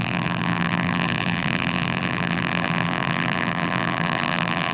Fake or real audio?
fake